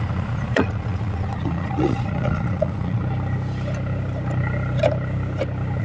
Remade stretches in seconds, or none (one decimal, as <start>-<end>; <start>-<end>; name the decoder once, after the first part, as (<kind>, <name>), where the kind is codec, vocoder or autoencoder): 0.0-3.0 (vocoder, Vocos)